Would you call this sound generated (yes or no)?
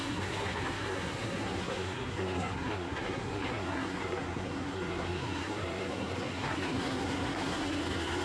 yes